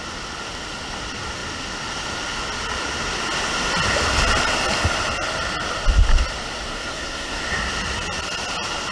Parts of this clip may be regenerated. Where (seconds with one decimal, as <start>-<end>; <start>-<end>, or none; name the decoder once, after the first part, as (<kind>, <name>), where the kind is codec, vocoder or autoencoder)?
6.7-7.4 (codec, SNAC)